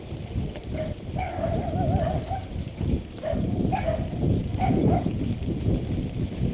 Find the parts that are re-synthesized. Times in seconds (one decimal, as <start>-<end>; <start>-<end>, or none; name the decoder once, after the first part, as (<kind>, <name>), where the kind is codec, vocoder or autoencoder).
0.6-1.2 (vocoder, BigVGAN v2); 2.1-3.8; 4.8-5.8

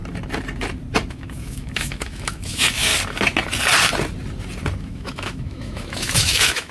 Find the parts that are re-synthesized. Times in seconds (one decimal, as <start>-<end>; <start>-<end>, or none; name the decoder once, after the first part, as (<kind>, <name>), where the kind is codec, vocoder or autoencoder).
1.1-2.9 (autoencoder, DAC-VAE); 4.8-6.7

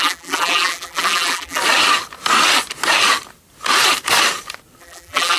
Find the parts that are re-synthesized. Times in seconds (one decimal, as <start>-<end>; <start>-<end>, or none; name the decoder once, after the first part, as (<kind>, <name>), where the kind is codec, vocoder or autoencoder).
0.0-1.6 (vocoder, BigVGAN v2); 4.8-5.4